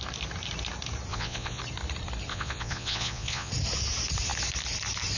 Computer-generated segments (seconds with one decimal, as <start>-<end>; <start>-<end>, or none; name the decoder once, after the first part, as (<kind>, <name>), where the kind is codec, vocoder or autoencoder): 1.1-1.6 (vocoder, Vocos); 2.3-3.5